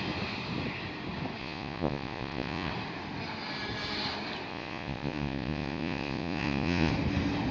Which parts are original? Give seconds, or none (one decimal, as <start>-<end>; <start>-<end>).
0.0-1.4; 2.7-4.5; 6.9-7.5